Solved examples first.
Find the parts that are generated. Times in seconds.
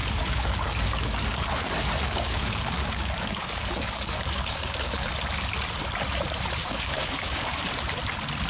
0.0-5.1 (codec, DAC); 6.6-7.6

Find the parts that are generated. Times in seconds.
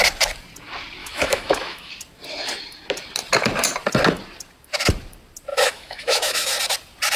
1.0-1.9 (autoencoder, DAC-VAE); 5.5-6.6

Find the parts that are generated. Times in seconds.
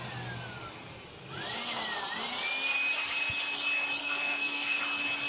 4.0-4.8 (codec, SNAC)